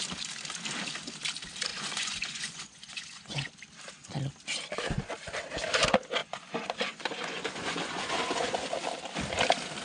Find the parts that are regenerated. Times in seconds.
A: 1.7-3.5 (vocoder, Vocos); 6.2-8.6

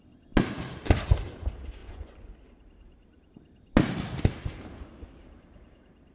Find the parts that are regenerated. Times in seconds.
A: 1.8-2.3 (vocoder, Vocos)